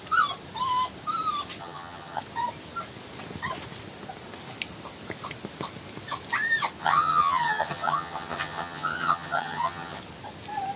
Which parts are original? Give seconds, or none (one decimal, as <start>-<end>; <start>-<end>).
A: 0.0-1.6; 2.2-6.8; 10.0-10.8

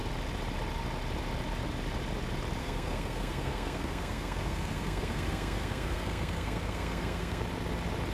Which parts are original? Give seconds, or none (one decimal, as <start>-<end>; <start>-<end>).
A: 0.0-2.6; 7.4-8.1

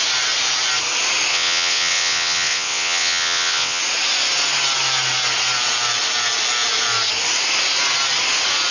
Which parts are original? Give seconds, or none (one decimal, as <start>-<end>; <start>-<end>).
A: 0.0-1.3; 3.8-8.7

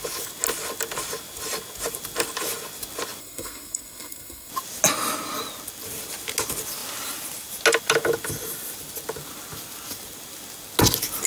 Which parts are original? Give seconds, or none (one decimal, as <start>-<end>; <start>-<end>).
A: 0.0-3.2; 4.5-11.3

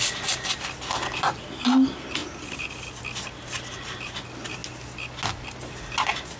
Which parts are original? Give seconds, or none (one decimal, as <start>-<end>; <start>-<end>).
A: 0.0-6.4

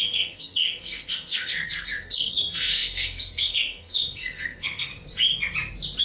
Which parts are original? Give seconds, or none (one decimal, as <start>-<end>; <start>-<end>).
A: 4.9-6.0

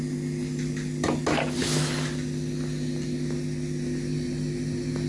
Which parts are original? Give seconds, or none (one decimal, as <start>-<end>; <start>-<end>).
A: 0.0-5.1

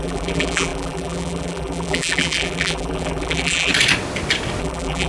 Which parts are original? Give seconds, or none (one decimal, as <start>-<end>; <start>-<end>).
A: 3.7-4.6